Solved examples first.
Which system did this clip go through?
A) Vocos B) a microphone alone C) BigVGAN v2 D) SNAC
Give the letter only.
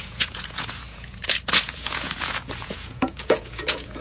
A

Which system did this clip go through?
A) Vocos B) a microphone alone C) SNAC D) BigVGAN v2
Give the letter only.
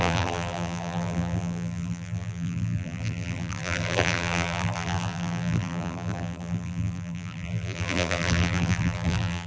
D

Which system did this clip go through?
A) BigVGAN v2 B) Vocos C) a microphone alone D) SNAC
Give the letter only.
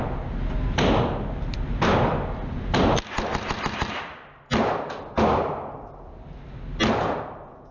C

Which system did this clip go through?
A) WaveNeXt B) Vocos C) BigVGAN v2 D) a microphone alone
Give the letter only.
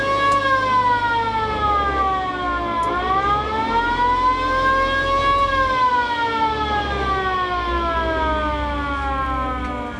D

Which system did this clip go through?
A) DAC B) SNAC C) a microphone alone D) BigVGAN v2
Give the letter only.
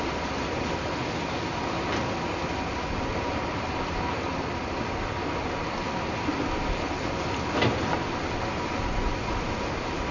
C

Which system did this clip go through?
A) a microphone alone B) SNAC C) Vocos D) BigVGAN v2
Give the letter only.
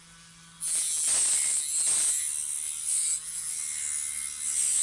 A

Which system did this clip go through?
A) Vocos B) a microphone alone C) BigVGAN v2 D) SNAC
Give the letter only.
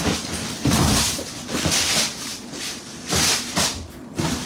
C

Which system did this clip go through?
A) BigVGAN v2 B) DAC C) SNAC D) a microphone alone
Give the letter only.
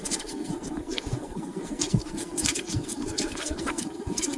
C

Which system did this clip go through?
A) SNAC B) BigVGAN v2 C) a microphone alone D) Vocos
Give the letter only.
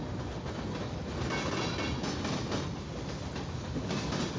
C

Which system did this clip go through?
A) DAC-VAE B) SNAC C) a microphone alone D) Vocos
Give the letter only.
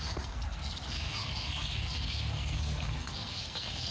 B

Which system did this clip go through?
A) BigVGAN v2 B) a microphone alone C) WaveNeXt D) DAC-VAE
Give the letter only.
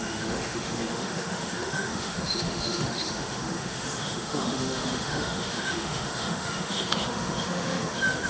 D